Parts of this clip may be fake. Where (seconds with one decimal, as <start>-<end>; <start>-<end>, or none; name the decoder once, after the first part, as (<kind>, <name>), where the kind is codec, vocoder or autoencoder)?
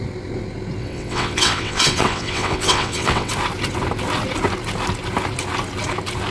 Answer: 0.8-3.3 (vocoder, WaveNeXt)